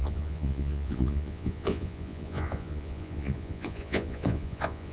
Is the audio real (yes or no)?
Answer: no